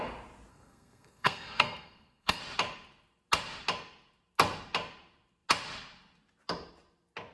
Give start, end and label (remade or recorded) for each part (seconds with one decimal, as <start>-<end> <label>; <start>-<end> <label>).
0.0-0.5 recorded; 0.5-2.4 remade; 2.4-7.3 recorded